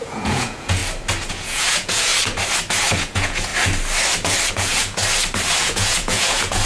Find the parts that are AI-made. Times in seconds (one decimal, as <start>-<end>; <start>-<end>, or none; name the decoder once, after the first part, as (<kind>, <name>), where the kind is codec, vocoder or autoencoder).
0.0-0.8 (vocoder, Vocos); 1.3-2.1; 2.9-3.5; 4.5-5.0; 5.6-6.7